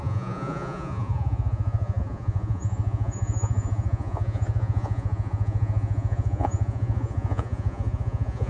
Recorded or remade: remade